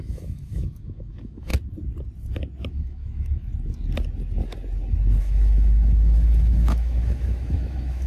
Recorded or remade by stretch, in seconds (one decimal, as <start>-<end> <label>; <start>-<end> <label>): 0.0-1.5 remade; 1.5-2.7 recorded; 2.7-3.5 remade; 3.5-5.2 recorded; 5.2-8.1 remade